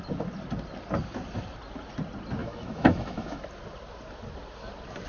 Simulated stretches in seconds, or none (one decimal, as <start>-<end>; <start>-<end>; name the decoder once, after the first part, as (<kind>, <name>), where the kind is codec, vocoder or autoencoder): 2.4-3.4 (autoencoder, DAC-VAE)